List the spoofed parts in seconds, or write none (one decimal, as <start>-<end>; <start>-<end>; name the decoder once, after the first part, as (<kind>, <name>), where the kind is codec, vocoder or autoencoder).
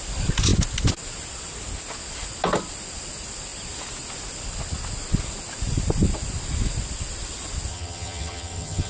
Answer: 7.7-8.9 (vocoder, HiFi-GAN)